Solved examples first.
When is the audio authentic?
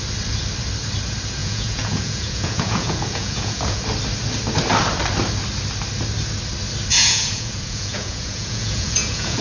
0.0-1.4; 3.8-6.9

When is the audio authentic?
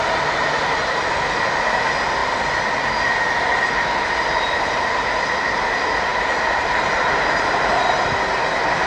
0.0-2.2; 3.7-6.1; 6.9-8.9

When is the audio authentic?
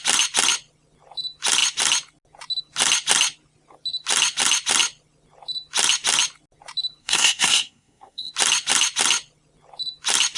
0.0-7.0; 8.3-10.4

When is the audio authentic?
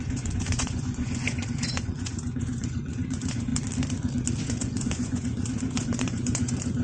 3.5-4.4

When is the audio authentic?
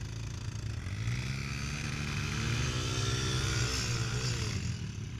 0.0-5.2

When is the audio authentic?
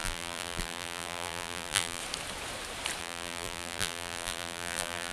2.0-3.0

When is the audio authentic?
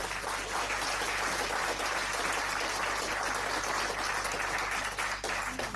0.0-5.8